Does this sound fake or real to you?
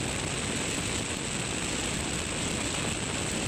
real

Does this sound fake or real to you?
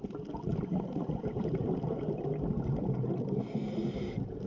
real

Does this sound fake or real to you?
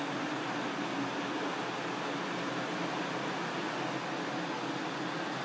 real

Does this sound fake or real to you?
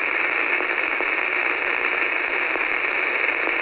real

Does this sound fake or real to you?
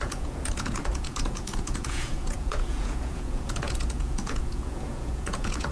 fake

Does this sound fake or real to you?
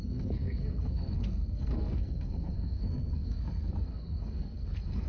fake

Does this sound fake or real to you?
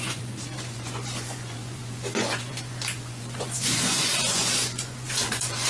fake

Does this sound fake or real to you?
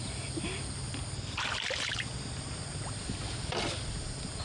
real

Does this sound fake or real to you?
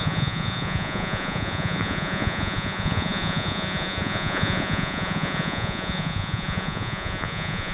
fake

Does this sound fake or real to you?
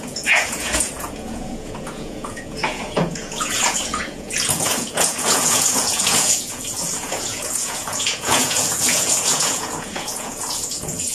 fake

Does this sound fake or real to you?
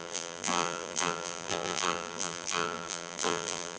fake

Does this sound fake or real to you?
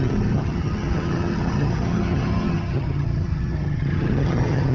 fake